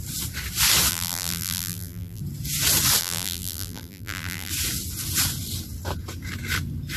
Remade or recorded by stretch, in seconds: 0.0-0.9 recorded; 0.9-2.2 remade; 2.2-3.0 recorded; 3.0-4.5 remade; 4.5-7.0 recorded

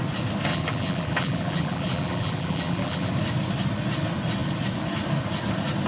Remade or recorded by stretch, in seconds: 0.0-0.5 recorded; 0.5-3.1 remade; 3.1-5.9 recorded